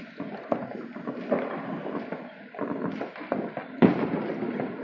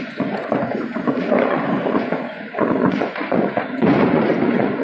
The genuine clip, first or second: first